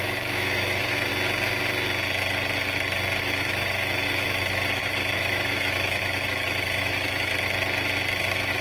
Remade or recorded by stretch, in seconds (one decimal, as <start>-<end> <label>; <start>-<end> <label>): 0.0-1.1 remade; 1.1-3.2 recorded; 3.2-7.3 remade; 7.3-8.2 recorded; 8.2-8.6 remade